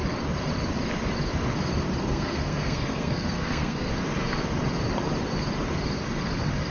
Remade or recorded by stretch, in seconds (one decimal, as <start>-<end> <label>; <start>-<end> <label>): 0.0-2.0 recorded; 2.0-4.0 remade; 4.0-6.7 recorded